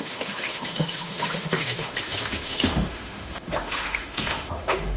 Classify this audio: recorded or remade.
remade